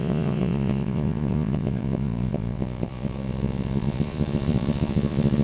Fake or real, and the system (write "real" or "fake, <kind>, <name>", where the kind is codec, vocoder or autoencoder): fake, vocoder, Vocos